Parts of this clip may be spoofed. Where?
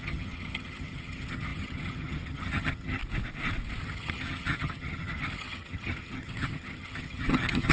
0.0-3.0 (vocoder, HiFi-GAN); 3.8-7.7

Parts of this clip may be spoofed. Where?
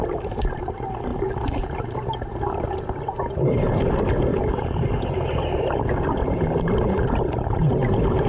0.0-0.6 (vocoder, BigVGAN v2); 4.3-5.3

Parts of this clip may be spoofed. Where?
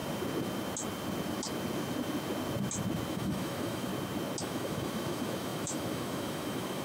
3.1-3.9 (autoencoder, DAC-VAE); 4.4-6.8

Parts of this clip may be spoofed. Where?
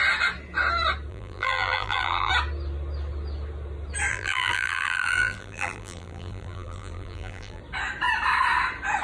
1.1-2.3 (vocoder, BigVGAN v2); 4.1-7.6